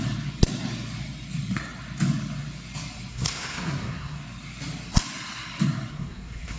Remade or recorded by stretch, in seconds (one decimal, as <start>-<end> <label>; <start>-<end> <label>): 0.0-3.1 recorded; 3.1-4.2 remade; 4.2-5.9 recorded; 5.9-6.6 remade